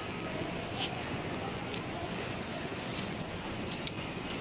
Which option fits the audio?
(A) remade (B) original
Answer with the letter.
A